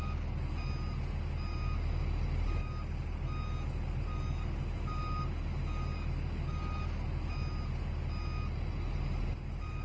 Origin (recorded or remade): recorded